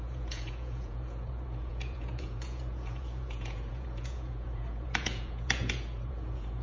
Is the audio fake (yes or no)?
yes